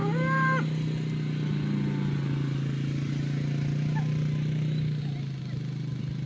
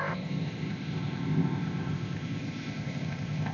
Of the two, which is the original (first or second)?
first